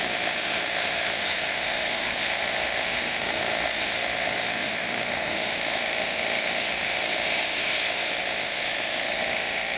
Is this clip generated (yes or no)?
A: yes